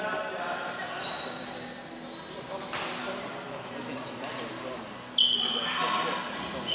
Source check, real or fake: real